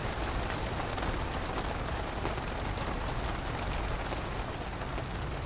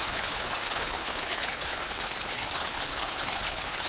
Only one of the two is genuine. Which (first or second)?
first